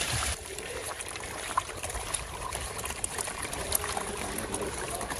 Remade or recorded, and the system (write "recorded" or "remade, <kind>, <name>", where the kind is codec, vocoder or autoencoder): remade, vocoder, BigVGAN v2